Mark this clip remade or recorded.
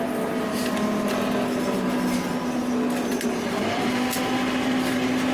recorded